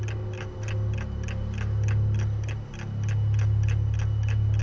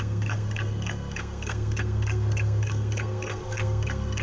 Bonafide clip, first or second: first